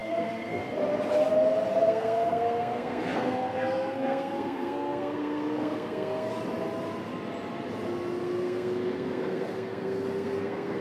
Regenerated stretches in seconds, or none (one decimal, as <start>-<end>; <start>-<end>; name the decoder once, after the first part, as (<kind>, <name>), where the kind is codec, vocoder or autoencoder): 0.0-0.6 (codec, SNAC); 1.7-6.3; 8.2-10.8